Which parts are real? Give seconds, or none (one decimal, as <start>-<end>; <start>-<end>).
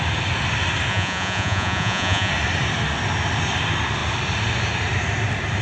0.0-0.9; 2.3-5.6